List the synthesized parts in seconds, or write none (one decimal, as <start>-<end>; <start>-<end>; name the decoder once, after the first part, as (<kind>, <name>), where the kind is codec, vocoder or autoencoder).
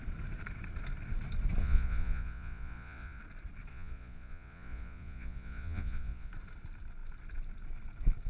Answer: 1.6-3.2 (vocoder, Vocos); 3.7-6.3